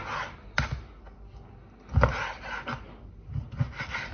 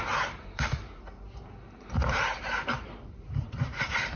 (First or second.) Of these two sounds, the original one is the first